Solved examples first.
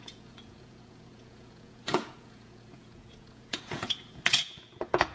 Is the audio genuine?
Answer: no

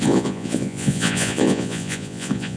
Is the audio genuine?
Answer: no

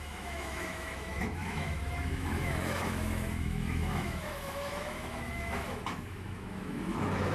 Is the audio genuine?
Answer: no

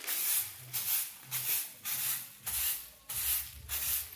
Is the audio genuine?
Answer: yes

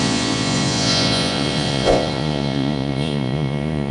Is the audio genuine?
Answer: no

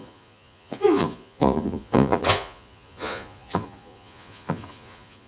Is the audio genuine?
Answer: no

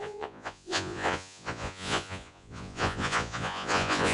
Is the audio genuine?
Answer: no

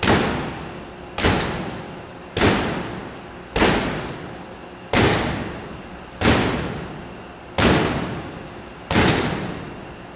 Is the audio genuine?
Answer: yes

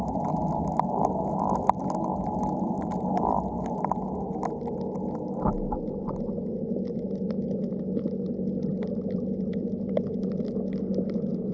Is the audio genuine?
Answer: yes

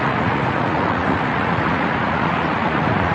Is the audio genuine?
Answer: no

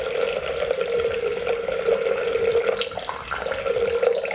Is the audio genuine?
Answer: yes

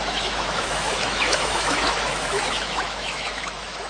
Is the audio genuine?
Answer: no